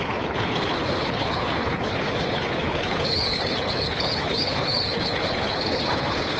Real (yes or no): no